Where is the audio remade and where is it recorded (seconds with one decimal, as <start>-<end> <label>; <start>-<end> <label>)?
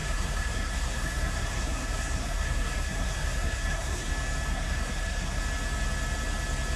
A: 0.0-4.1 remade; 4.1-4.5 recorded; 4.5-5.4 remade; 5.4-6.8 recorded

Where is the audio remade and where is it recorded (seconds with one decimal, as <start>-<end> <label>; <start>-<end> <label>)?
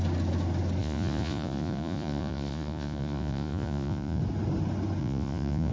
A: 0.0-0.8 recorded; 0.8-4.2 remade; 4.2-5.0 recorded; 5.0-5.7 remade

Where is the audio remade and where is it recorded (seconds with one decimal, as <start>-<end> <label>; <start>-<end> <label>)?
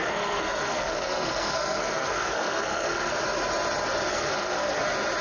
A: 0.0-3.1 remade; 3.1-4.1 recorded; 4.1-4.8 remade; 4.8-5.2 recorded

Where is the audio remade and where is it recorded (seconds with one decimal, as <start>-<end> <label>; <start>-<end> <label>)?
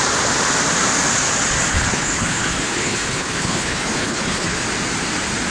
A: 0.0-1.7 recorded; 1.7-4.6 remade; 4.6-5.5 recorded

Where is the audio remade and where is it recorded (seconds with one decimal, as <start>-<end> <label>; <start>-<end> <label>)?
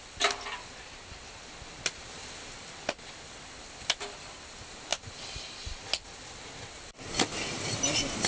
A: 0.0-8.3 recorded